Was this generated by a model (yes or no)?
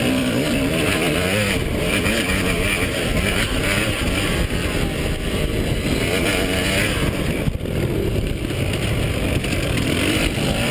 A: yes